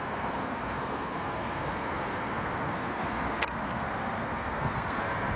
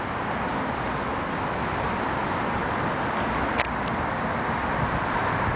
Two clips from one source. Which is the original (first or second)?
second